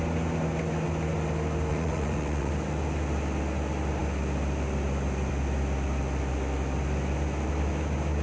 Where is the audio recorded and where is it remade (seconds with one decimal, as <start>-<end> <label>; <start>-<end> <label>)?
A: 0.0-1.7 recorded; 1.7-2.5 remade; 2.5-8.2 recorded